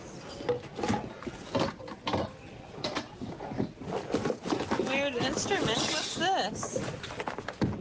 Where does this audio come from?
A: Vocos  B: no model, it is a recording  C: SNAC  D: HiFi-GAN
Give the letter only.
B